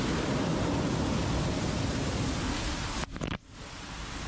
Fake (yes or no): yes